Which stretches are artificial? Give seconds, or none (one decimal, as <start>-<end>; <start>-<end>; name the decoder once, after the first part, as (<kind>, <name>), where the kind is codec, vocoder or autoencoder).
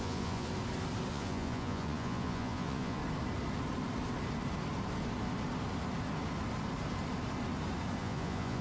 0.0-0.5 (vocoder, Vocos); 1.1-3.0; 8.0-8.6